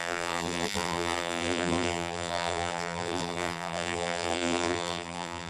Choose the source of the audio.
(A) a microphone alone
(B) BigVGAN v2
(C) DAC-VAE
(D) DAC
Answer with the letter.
B